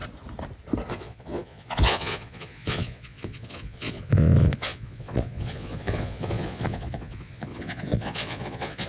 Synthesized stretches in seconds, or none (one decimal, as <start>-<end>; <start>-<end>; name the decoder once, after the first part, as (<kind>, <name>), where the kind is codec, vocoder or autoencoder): 0.9-8.9 (vocoder, Vocos)